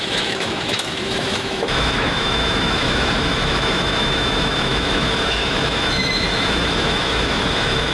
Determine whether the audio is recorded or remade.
remade